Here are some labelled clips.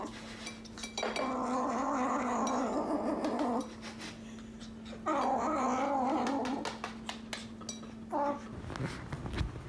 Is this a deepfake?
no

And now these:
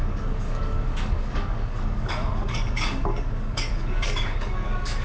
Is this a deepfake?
yes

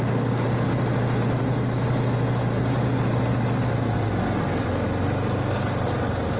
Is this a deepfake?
no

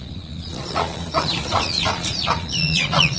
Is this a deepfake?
yes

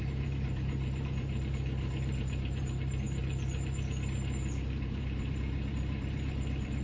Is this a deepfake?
yes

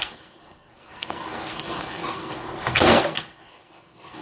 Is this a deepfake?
yes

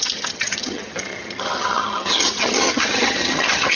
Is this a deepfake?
yes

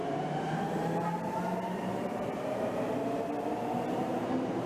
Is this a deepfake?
no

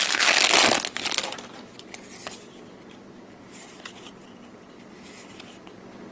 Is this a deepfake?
no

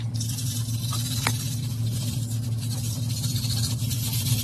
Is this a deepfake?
yes